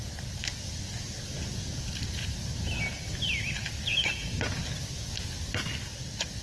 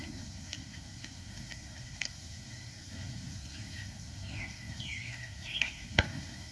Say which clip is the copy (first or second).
second